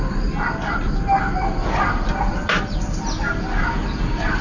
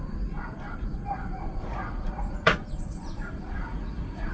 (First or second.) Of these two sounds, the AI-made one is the second